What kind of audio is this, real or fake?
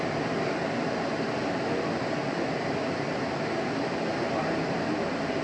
real